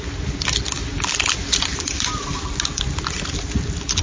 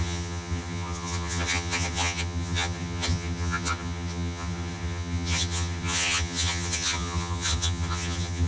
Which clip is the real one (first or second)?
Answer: first